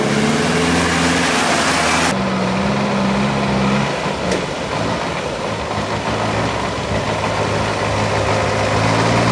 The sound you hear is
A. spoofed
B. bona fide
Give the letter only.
B